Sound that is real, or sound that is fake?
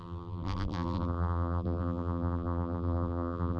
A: fake